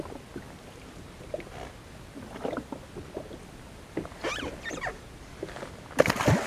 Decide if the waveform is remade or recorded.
recorded